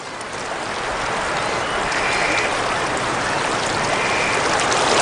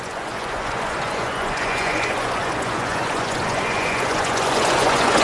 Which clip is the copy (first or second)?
second